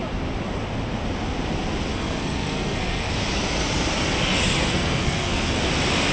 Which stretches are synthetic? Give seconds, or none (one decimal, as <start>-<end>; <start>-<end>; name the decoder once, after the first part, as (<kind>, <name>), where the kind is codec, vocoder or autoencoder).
1.9-3.1 (codec, SNAC); 4.7-5.6